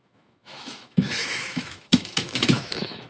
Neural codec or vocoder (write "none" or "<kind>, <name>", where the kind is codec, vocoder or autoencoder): autoencoder, DAC-VAE